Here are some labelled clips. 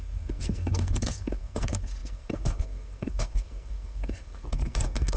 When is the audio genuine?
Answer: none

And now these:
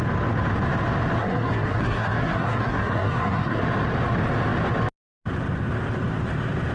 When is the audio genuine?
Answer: 0.0-1.2; 3.6-6.7

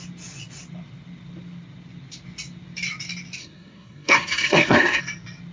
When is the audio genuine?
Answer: 0.0-3.4; 5.0-5.5

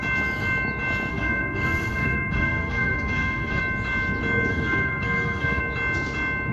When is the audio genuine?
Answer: 0.0-1.1; 3.6-4.5; 5.6-6.5

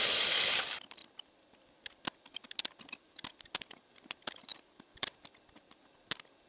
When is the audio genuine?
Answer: 0.0-6.5

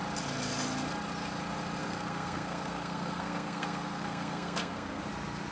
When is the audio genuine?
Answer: 0.0-1.8; 5.0-5.5